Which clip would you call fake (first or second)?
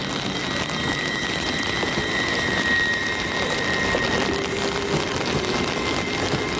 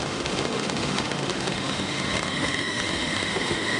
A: second